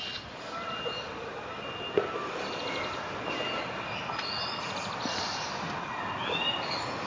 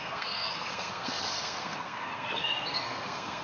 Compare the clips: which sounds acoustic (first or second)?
first